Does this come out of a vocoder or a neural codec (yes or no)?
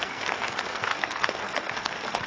yes